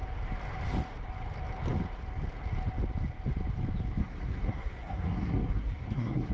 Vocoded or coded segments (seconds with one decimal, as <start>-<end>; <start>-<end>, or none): 4.0-6.3